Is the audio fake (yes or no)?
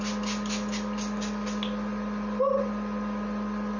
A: no